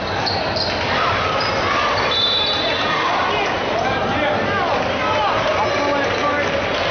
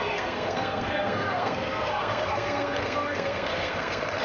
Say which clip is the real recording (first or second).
first